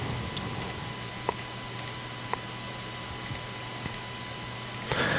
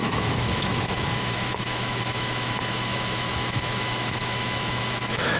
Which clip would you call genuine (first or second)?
first